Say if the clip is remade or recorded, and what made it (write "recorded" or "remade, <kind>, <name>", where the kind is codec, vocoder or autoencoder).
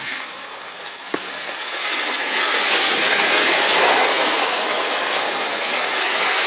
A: remade, codec, SNAC